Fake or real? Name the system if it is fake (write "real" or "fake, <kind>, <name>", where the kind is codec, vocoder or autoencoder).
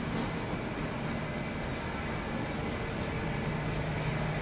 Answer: real